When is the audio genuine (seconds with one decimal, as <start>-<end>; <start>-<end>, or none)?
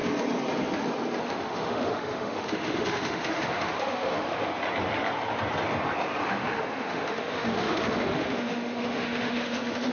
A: 0.0-1.2; 4.5-6.2